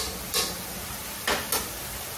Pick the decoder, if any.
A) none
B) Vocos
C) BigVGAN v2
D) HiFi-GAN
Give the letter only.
A